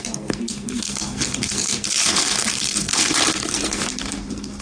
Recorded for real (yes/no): no